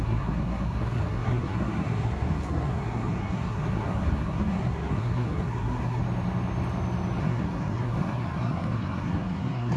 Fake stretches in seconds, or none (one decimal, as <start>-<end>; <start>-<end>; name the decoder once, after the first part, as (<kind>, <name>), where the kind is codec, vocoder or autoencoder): 0.0-6.0 (codec, SNAC); 7.2-9.8